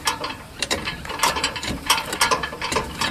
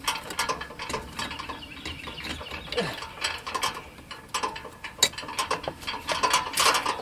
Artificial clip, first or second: first